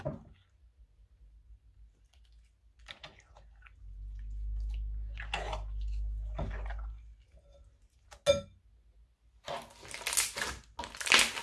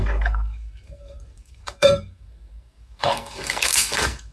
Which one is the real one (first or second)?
first